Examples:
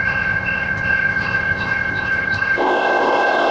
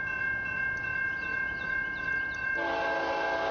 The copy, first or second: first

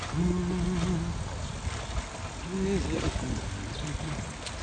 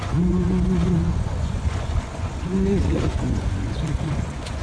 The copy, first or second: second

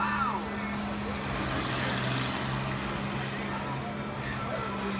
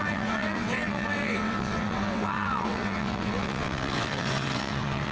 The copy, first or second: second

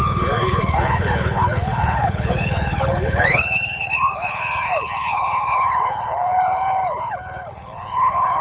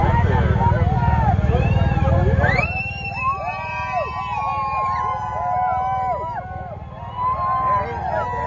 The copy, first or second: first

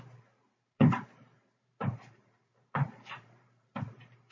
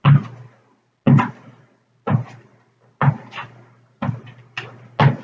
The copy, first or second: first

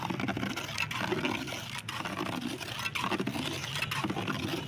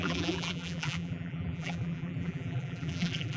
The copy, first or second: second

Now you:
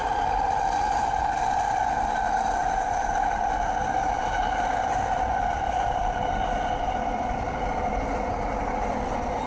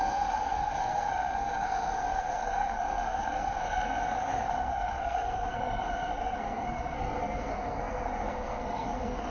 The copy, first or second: second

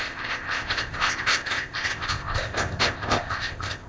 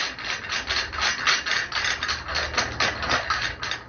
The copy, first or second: first